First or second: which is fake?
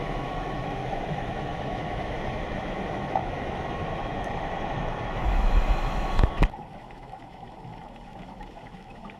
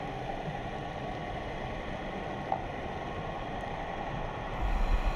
first